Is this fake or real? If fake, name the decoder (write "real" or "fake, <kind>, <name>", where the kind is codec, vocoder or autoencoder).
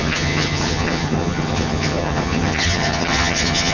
fake, vocoder, HiFi-GAN